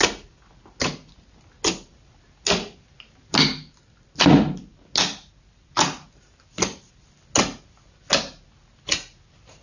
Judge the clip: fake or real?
real